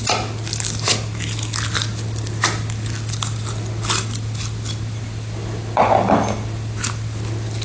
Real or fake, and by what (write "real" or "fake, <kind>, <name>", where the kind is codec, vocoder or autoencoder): real